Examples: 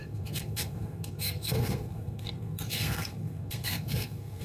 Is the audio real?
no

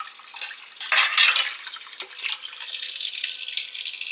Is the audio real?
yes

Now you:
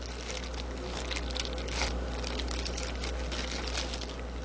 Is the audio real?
yes